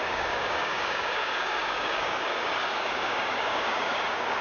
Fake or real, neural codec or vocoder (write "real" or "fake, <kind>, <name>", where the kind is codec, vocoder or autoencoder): fake, codec, DAC